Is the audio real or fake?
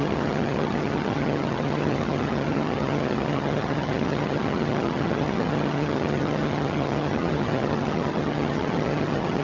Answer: fake